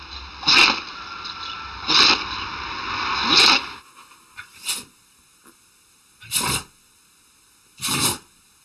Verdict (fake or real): real